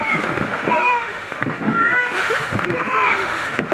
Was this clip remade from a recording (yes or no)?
yes